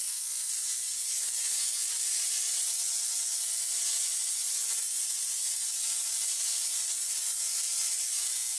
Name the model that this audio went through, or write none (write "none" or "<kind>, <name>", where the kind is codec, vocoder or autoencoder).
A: none